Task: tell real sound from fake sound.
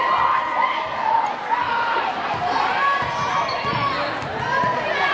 real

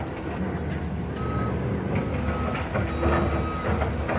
real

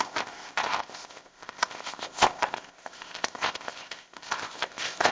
fake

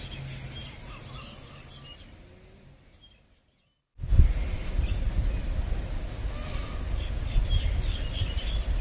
real